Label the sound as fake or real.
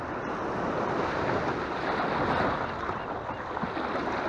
real